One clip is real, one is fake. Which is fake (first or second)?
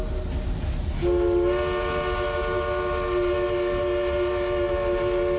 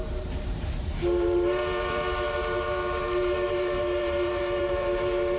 second